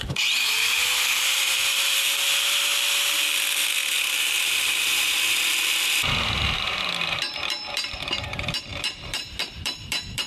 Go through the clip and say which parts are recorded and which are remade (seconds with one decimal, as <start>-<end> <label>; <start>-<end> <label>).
0.0-2.7 remade; 2.7-4.0 recorded; 4.0-10.3 remade